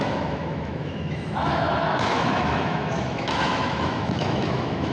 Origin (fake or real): fake